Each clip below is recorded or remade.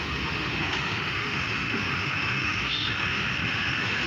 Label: remade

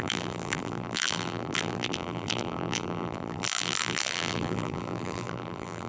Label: remade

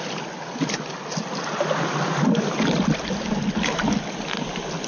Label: recorded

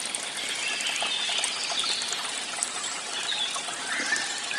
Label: recorded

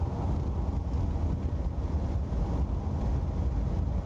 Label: recorded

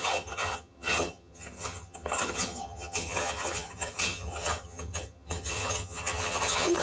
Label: remade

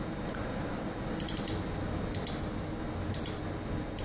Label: recorded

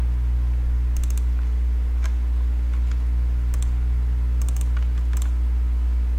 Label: recorded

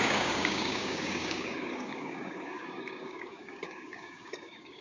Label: remade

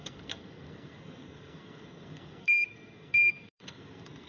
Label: remade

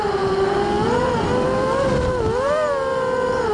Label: recorded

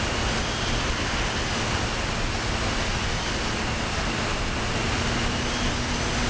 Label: recorded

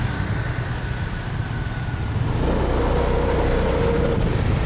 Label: recorded